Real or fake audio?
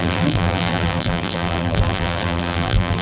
fake